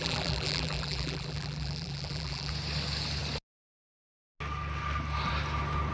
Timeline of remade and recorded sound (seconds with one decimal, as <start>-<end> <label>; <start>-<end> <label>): 0.0-2.5 remade; 2.5-5.9 recorded